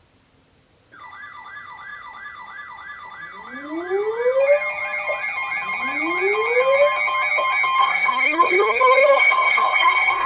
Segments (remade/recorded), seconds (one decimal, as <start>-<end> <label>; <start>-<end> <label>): 0.0-7.8 recorded; 7.8-10.3 remade